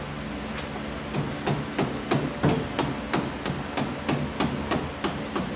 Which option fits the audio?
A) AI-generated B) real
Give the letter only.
B